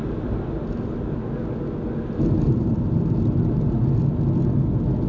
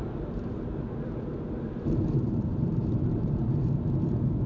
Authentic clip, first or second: first